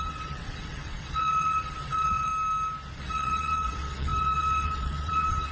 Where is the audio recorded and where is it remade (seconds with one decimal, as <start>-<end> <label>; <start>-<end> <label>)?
0.0-2.3 remade; 2.3-3.0 recorded; 3.0-5.5 remade